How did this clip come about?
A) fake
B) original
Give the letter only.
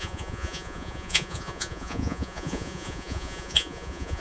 A